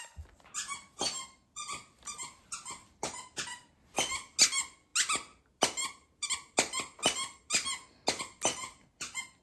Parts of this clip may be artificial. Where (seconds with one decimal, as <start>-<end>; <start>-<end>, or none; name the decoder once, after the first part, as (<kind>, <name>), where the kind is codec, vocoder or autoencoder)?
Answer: none